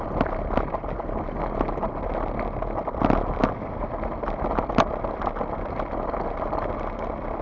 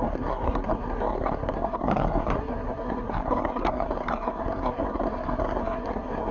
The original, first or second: first